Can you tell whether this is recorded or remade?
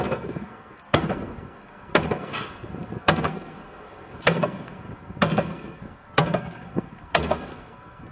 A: remade